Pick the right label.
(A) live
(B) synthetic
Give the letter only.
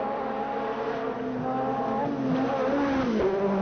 A